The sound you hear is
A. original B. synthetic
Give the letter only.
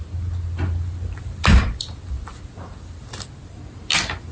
A